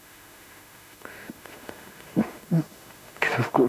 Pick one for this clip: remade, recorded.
remade